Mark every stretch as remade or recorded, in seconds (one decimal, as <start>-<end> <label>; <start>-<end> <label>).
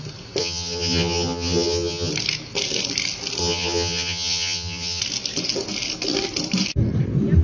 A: 0.0-0.4 recorded; 0.4-2.1 remade; 2.1-3.4 recorded; 3.4-5.0 remade; 5.0-7.4 recorded